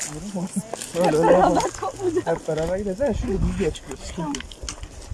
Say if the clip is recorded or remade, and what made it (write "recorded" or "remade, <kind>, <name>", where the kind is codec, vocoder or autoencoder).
recorded